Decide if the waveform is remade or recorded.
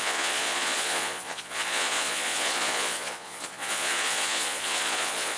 remade